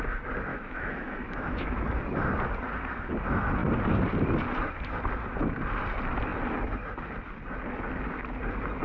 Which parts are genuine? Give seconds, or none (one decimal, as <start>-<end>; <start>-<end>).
0.0-0.5; 1.8-8.8